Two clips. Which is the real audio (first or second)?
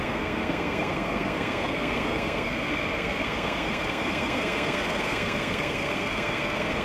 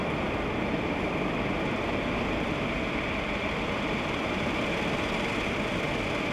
second